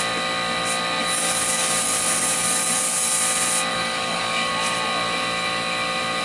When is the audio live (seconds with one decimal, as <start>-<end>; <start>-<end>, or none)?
0.0-1.0; 3.1-3.7; 4.5-6.2